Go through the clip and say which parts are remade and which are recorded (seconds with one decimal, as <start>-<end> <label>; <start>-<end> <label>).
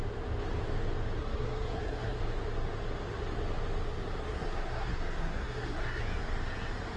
0.0-1.2 recorded; 1.2-2.2 remade; 2.2-4.2 recorded; 4.2-6.0 remade; 6.0-7.0 recorded